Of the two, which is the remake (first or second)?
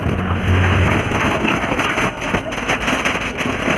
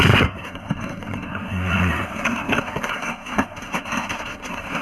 second